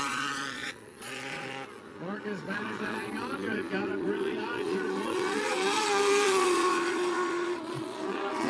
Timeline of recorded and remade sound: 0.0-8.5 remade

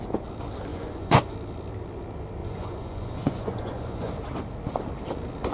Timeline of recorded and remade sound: 0.0-0.7 recorded; 0.7-1.3 remade; 1.3-2.4 recorded; 2.4-4.1 remade; 4.1-5.5 recorded

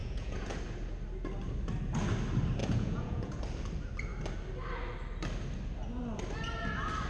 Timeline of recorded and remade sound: 0.0-0.5 remade; 0.5-2.6 recorded; 2.6-3.4 remade; 3.4-7.1 recorded

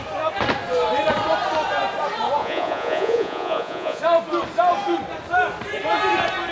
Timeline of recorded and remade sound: 0.0-2.4 recorded; 2.4-4.0 remade; 4.0-6.5 recorded

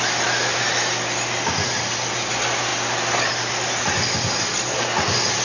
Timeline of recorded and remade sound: 0.0-5.4 recorded